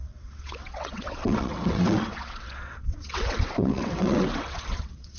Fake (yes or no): yes